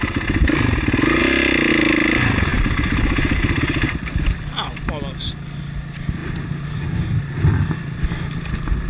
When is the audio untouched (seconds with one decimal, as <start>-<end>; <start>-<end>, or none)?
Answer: 0.0-8.9